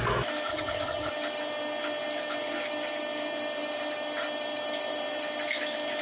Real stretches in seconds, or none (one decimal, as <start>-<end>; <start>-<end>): 0.0-0.5; 1.1-6.0